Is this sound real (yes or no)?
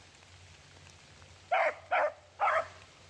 yes